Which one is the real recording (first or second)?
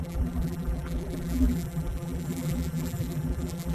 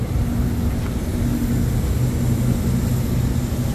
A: second